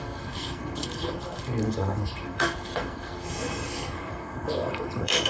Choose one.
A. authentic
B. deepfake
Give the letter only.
B